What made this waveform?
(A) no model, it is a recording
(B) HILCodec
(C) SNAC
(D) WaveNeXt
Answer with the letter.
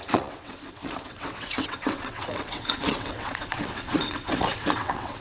D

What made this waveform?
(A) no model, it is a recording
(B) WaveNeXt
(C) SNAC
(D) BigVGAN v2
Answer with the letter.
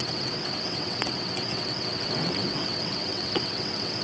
B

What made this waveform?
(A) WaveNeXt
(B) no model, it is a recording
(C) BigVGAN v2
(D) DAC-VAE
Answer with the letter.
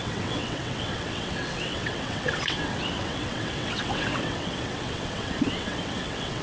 A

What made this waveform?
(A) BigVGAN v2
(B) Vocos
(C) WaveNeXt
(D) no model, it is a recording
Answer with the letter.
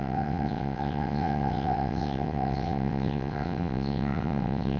C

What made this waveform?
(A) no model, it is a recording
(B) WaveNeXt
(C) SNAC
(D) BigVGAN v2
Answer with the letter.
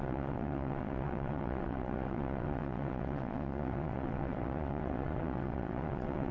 B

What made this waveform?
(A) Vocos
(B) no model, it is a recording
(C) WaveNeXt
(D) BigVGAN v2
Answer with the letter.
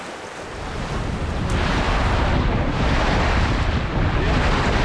B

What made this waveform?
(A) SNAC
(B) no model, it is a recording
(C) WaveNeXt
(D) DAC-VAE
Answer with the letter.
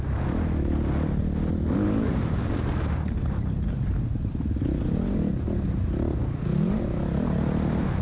B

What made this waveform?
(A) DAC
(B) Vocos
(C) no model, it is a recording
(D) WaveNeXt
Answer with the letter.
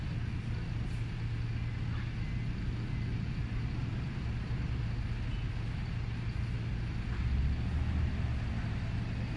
C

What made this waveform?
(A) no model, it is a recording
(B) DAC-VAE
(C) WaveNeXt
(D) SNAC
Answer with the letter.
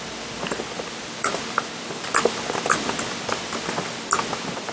A